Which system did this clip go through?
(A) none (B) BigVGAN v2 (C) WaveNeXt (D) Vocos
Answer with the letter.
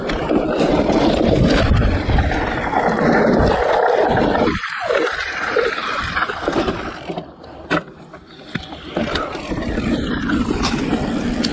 B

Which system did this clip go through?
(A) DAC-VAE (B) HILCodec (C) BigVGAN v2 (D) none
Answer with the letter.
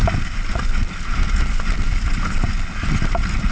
D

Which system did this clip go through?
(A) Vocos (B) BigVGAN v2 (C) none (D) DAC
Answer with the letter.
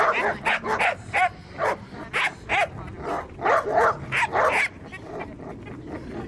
C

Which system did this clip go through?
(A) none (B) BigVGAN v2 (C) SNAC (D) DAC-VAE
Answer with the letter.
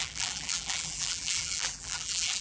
B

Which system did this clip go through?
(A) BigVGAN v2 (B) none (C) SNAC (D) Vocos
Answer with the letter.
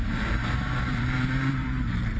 A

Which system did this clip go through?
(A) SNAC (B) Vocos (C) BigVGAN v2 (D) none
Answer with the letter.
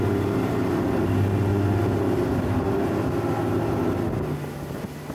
D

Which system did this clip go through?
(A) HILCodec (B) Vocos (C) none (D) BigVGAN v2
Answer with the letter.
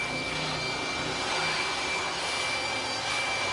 C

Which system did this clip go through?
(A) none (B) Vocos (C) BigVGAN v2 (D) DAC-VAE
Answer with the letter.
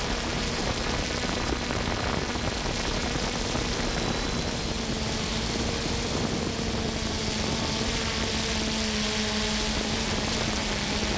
A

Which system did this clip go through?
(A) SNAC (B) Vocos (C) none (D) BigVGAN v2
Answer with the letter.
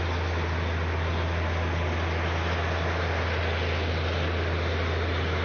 C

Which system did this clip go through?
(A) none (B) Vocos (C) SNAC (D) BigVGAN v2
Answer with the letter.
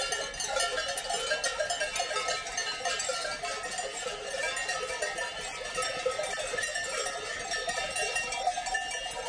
A